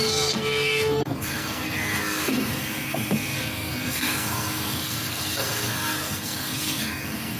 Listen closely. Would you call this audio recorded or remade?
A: remade